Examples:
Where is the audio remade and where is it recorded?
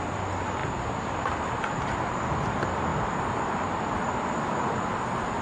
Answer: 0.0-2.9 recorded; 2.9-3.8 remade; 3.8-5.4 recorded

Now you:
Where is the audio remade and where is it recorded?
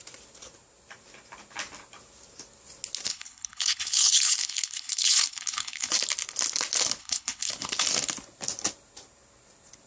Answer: 0.0-3.1 recorded; 3.1-5.9 remade; 5.9-7.0 recorded; 7.0-7.5 remade; 7.5-9.9 recorded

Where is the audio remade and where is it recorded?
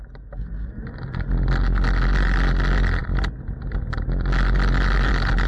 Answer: 0.0-5.5 recorded